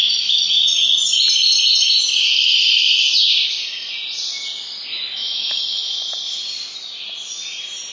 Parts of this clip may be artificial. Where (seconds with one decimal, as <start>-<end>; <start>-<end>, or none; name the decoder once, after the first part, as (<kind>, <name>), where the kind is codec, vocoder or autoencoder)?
4.9-5.6 (autoencoder, DAC-VAE)